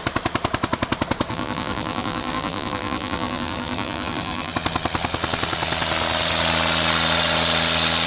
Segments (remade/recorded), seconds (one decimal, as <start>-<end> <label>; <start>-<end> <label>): 0.0-1.3 recorded; 1.3-4.5 remade; 4.5-8.1 recorded